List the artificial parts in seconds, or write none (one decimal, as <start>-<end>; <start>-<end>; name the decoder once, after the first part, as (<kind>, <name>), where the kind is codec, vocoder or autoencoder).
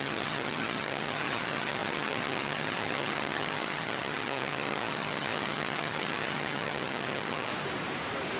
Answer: 0.0-7.5 (vocoder, HiFi-GAN)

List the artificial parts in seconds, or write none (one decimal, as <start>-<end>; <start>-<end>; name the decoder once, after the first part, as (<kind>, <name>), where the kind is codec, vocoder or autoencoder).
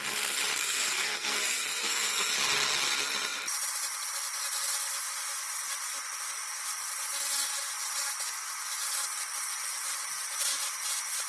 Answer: 0.6-2.3 (codec, SNAC)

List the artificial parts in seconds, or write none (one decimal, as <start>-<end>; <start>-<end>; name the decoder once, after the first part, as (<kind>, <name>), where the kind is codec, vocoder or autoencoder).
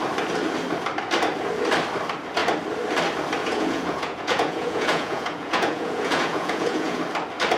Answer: 3.4-7.0 (vocoder, Vocos)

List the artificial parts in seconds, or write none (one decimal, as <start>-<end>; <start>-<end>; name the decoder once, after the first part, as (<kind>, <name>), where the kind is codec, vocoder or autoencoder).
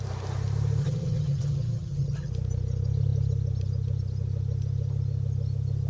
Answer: 0.8-2.3 (vocoder, HiFi-GAN)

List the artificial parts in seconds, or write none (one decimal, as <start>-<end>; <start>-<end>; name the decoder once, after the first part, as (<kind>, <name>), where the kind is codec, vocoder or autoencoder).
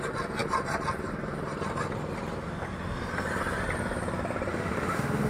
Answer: 4.5-5.3 (autoencoder, DAC-VAE)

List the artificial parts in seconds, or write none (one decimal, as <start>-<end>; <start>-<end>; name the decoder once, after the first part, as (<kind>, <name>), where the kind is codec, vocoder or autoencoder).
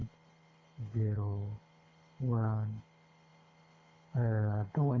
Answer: 0.0-5.0 (codec, HILCodec)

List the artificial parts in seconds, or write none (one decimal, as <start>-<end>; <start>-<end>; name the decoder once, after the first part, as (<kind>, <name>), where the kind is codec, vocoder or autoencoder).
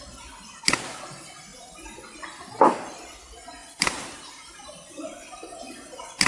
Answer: 3.6-5.7 (vocoder, BigVGAN v2)